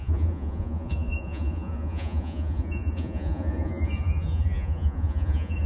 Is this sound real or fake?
fake